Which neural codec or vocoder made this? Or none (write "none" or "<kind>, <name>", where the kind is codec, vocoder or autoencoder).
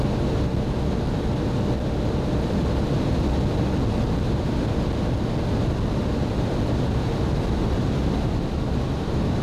none